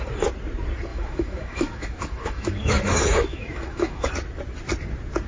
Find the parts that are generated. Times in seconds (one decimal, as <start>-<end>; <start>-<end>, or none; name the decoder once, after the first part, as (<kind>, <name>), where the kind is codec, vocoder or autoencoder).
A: 0.9-4.1 (autoencoder, DAC-VAE)